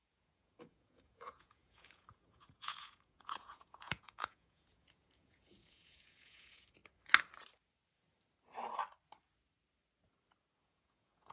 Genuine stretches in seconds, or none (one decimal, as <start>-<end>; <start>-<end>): 6.8-10.6